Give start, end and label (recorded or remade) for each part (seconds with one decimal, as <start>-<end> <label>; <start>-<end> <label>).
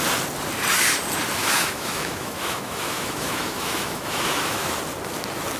0.0-1.4 recorded; 1.4-4.8 remade; 4.8-5.6 recorded